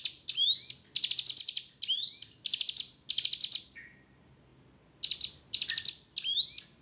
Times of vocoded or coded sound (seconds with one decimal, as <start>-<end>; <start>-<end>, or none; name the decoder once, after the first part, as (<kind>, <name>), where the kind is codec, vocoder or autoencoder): none